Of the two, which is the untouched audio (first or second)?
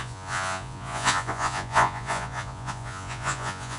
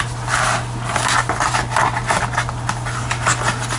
second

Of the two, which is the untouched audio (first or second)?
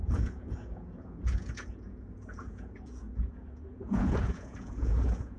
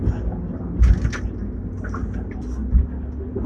second